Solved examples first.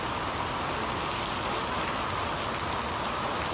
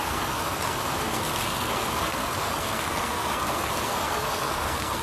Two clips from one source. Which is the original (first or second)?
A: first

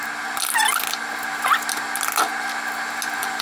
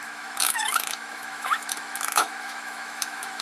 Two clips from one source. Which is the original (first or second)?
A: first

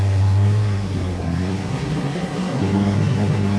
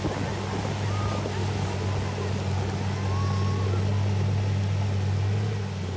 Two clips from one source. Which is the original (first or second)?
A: second